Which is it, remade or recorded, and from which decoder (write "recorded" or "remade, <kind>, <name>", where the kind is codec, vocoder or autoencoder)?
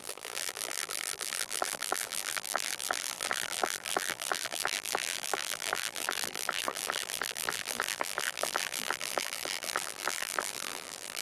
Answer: remade, vocoder, BigVGAN v2